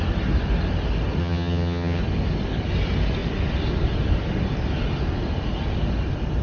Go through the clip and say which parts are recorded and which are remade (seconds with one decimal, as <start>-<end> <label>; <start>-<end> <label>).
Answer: 0.0-1.2 recorded; 1.2-2.0 remade; 2.0-6.4 recorded